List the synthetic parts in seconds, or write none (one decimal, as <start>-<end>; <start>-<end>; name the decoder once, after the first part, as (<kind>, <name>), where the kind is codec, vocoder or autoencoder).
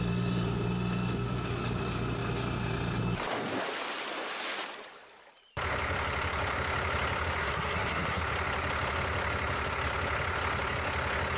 7.4-8.2 (codec, SNAC)